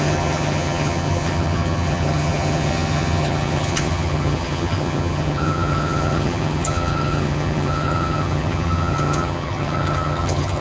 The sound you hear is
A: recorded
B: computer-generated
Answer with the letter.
B